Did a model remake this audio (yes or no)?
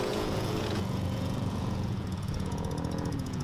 yes